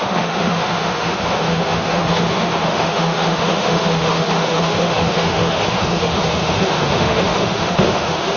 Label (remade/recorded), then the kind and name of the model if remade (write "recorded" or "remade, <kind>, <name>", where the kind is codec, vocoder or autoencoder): remade, autoencoder, DAC-VAE